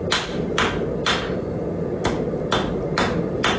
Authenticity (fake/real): fake